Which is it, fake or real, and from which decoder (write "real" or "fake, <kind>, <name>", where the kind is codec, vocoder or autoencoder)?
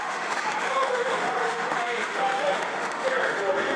fake, autoencoder, DAC-VAE